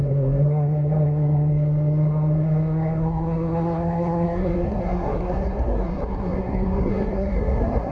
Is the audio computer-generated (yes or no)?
yes